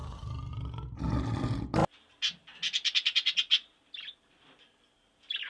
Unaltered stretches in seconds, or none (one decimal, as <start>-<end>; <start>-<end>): 0.0-5.5